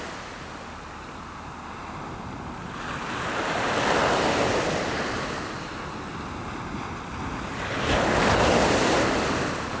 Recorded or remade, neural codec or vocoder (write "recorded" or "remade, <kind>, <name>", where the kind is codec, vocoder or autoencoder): recorded